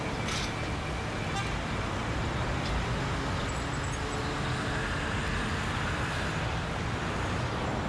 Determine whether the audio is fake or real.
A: real